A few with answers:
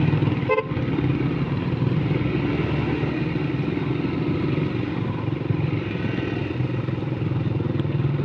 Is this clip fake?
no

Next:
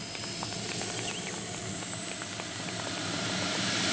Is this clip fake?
no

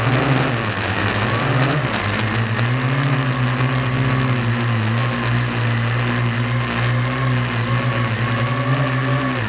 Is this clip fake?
no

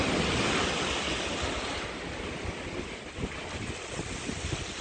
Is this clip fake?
no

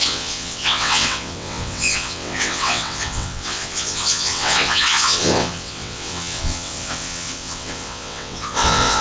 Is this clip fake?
yes